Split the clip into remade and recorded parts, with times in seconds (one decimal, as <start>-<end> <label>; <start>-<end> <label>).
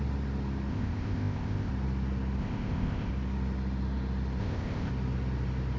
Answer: 0.0-0.7 recorded; 0.7-1.7 remade; 1.7-2.4 recorded; 2.4-3.1 remade; 3.1-4.4 recorded; 4.4-4.9 remade; 4.9-5.8 recorded